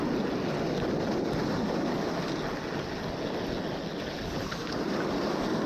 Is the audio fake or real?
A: real